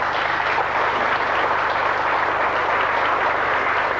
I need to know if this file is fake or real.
real